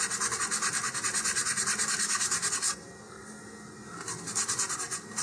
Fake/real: real